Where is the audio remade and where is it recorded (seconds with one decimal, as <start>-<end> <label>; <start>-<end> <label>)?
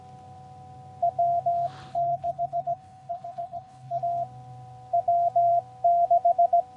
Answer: 0.0-1.9 recorded; 1.9-4.0 remade; 4.0-6.8 recorded